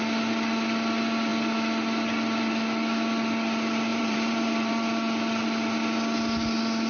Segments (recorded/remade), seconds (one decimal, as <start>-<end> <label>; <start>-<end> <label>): 0.0-3.9 recorded; 3.9-4.7 remade; 4.7-6.9 recorded